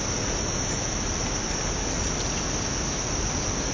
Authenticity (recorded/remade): recorded